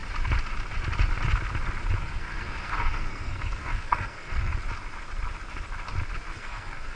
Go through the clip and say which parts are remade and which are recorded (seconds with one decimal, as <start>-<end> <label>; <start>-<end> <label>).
0.0-2.0 recorded; 2.0-4.5 remade; 4.5-6.3 recorded; 6.3-7.0 remade